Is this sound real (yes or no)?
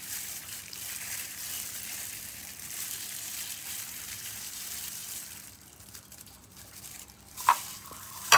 no